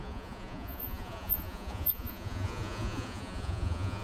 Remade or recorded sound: remade